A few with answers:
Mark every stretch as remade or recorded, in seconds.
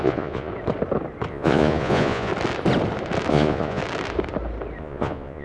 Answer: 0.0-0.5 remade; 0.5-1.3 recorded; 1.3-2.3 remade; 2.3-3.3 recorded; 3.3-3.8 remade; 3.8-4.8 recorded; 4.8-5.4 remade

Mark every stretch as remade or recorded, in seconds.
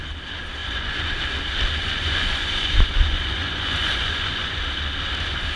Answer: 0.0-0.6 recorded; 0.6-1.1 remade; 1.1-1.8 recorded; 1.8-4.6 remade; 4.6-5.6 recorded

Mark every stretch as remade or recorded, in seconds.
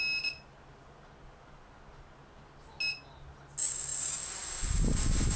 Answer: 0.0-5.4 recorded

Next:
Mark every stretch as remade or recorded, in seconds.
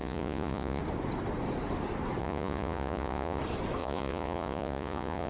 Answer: 0.0-0.8 remade; 0.8-2.2 recorded; 2.2-3.4 remade; 3.4-3.8 recorded; 3.8-5.3 remade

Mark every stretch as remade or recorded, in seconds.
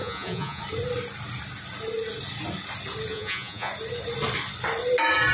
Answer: 0.0-0.6 remade; 0.6-3.1 recorded; 3.1-3.7 remade; 3.7-5.3 recorded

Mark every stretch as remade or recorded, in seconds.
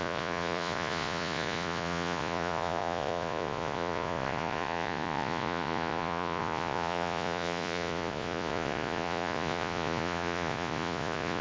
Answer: 0.0-11.4 remade